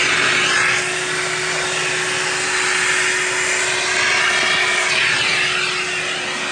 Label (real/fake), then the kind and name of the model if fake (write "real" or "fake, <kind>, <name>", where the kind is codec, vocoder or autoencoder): real